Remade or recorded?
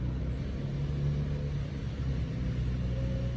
recorded